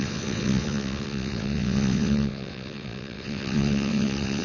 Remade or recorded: remade